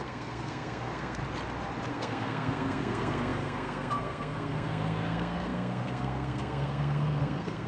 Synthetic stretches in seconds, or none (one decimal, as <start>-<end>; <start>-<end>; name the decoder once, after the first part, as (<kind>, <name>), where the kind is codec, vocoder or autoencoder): 0.0-1.2 (codec, SNAC); 1.9-7.7